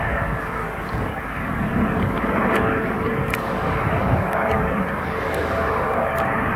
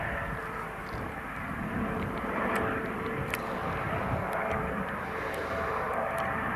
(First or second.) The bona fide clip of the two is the second